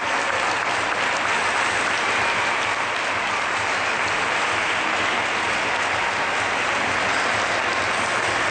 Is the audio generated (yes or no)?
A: no